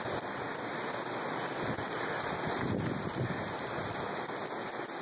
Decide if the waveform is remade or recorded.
recorded